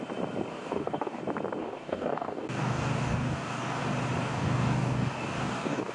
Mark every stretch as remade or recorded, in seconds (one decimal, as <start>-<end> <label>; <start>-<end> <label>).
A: 0.0-0.5 recorded; 0.5-1.2 remade; 1.2-1.6 recorded; 1.6-3.8 remade; 3.8-4.2 recorded; 4.2-5.9 remade